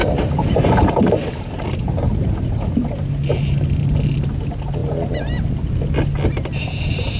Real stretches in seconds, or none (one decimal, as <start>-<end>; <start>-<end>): 4.3-7.2